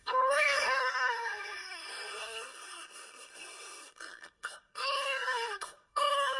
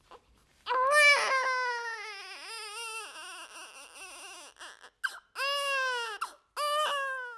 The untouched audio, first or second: second